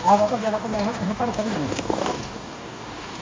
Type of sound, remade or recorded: remade